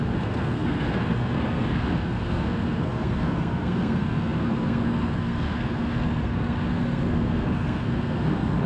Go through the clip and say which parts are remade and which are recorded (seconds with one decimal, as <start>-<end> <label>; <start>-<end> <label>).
0.0-8.7 remade